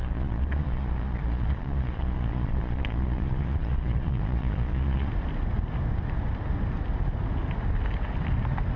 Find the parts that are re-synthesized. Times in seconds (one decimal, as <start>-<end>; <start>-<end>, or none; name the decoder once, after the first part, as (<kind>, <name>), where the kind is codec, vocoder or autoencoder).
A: 0.0-5.1 (vocoder, Vocos)